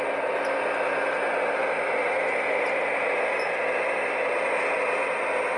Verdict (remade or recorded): recorded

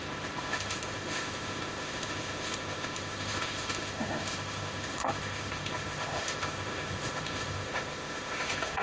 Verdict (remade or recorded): remade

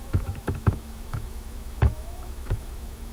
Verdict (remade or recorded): remade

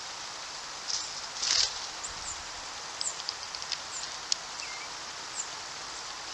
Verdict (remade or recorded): recorded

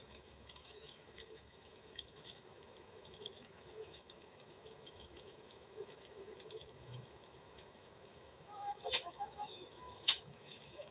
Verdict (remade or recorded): remade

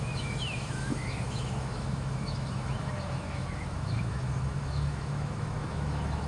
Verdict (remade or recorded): remade